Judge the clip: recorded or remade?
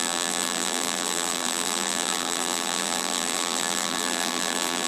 remade